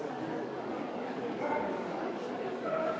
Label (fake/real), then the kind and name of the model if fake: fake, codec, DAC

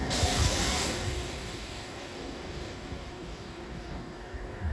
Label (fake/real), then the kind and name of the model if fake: fake, codec, DAC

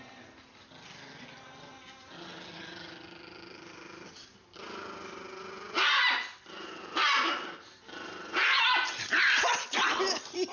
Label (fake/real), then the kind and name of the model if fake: real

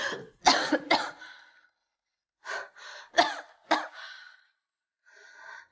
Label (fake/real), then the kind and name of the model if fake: real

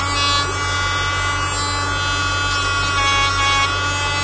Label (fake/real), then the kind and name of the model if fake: real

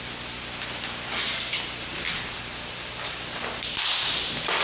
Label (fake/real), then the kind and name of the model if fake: real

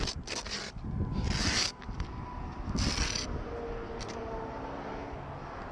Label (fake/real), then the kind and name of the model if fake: real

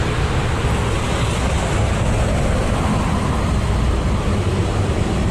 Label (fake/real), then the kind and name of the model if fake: real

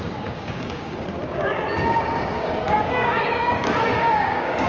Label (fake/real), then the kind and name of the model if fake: fake, codec, DAC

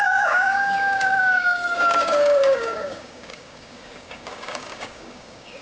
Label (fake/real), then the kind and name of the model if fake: fake, codec, DAC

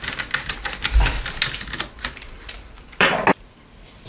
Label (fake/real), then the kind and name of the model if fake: real